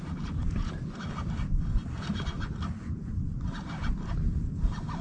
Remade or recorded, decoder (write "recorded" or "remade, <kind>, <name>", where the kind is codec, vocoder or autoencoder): recorded